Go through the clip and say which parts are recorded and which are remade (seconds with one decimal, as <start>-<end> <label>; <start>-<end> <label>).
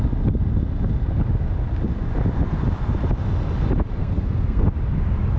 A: 0.0-4.0 recorded; 4.0-4.7 remade; 4.7-5.4 recorded